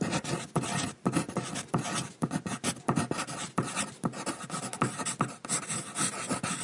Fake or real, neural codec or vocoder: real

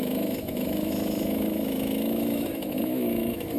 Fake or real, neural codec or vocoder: fake, autoencoder, DAC-VAE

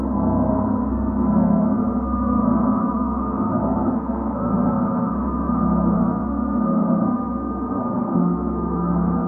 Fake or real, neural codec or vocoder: fake, codec, SNAC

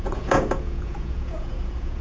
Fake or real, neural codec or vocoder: fake, vocoder, Vocos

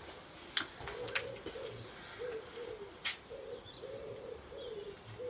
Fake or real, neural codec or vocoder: real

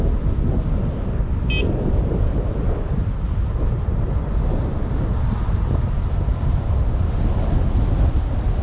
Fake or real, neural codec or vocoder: real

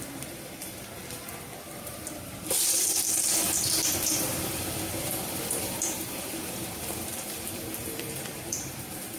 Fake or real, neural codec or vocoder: fake, vocoder, BigVGAN v2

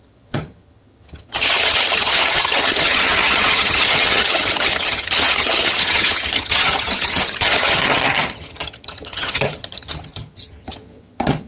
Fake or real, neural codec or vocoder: fake, vocoder, HiFi-GAN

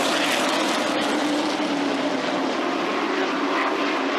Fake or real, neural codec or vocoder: fake, vocoder, BigVGAN v2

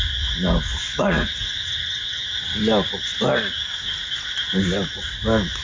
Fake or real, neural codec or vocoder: real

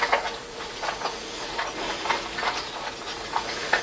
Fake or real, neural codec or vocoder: fake, vocoder, Vocos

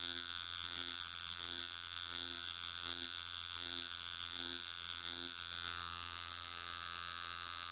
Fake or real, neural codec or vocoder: fake, vocoder, BigVGAN v2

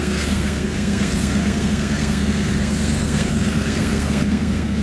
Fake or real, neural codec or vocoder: fake, codec, SNAC